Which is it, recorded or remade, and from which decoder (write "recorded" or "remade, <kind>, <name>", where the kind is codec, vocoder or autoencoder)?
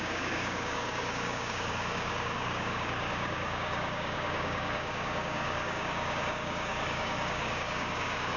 remade, codec, DAC